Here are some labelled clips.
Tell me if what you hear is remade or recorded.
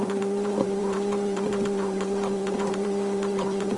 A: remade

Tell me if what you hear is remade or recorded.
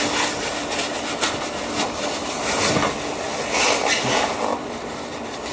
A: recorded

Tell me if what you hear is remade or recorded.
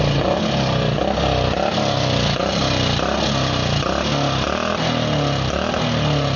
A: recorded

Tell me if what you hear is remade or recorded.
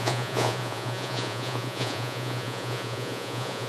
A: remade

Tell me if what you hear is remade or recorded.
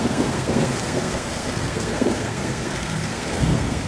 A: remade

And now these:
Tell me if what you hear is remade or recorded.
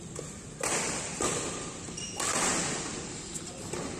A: recorded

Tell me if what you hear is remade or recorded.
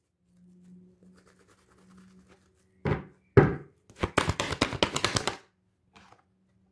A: recorded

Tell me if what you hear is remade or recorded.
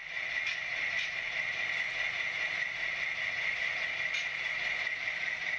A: recorded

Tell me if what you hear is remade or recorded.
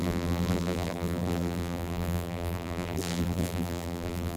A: remade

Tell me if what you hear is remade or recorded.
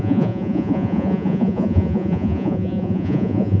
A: remade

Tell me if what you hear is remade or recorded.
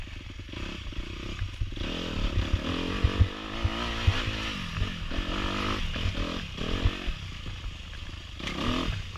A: recorded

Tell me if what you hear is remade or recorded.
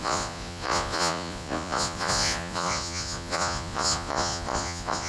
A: remade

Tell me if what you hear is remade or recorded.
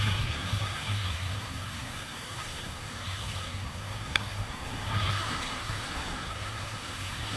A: remade